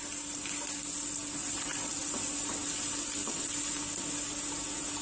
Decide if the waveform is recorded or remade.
recorded